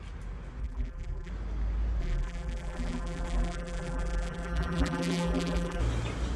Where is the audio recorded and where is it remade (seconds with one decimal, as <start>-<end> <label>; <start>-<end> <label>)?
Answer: 0.0-0.6 recorded; 0.6-1.3 remade; 1.3-2.0 recorded; 2.0-5.8 remade; 5.8-6.4 recorded